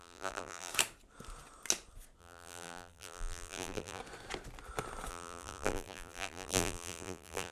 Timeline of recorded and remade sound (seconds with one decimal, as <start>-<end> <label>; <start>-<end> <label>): 0.0-0.7 remade; 0.7-2.2 recorded; 2.2-4.0 remade; 4.0-5.1 recorded; 5.1-7.5 remade